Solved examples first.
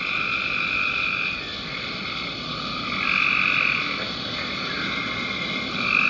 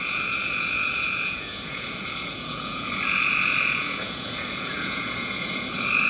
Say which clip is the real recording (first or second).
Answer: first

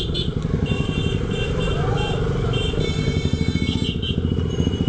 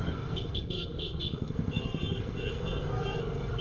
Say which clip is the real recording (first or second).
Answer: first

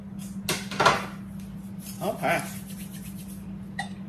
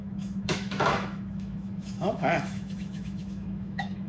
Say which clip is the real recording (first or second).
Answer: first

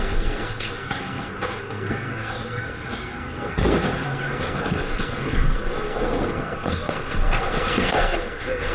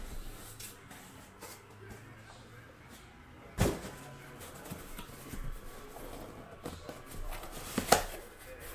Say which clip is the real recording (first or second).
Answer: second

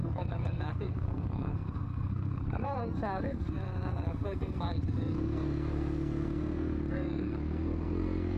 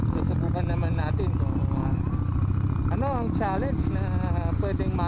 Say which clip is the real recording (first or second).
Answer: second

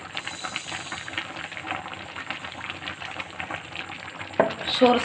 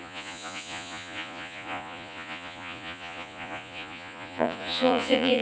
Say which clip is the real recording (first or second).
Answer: first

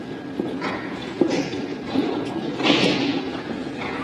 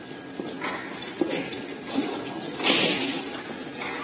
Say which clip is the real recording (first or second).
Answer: second